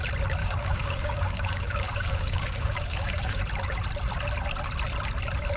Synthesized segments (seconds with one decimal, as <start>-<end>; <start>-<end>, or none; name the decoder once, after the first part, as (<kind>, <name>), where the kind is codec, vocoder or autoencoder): 0.4-3.4 (codec, DAC)